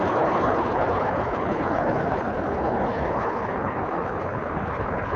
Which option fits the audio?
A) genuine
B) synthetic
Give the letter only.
B